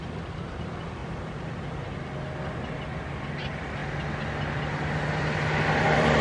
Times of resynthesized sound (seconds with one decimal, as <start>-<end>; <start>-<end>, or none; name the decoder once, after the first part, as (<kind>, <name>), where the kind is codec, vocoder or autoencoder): 0.0-1.0 (vocoder, BigVGAN v2); 2.7-3.8; 5.7-6.2